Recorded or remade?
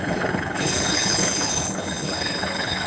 remade